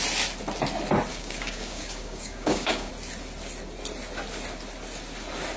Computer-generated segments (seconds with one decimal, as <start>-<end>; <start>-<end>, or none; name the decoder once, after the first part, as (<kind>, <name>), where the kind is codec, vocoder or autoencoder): 1.1-2.9 (codec, DAC)